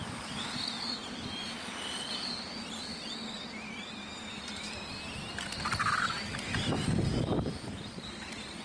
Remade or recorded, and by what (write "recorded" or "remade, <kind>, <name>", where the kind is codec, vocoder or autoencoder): recorded